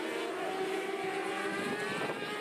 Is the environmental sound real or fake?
real